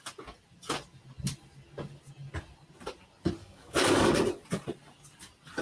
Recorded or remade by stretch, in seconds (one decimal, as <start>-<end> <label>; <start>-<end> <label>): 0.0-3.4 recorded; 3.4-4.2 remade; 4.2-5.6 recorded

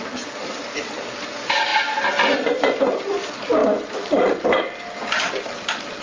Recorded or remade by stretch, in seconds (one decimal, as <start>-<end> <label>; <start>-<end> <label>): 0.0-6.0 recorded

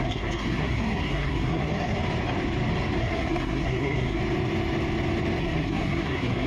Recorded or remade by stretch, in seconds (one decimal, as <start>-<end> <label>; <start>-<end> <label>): 0.0-2.0 remade; 2.0-3.0 recorded; 3.0-4.2 remade; 4.2-5.4 recorded; 5.4-6.5 remade

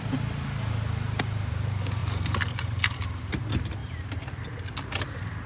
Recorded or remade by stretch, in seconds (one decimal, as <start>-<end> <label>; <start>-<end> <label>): 0.0-3.8 recorded; 3.8-4.4 remade; 4.4-5.5 recorded

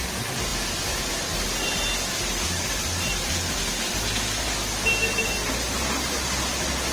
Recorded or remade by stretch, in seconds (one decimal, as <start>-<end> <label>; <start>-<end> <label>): 0.0-6.9 recorded